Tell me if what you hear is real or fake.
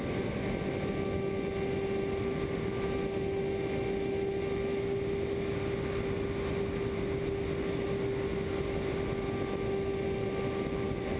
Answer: real